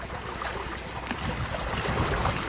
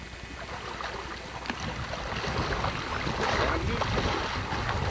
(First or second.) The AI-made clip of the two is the first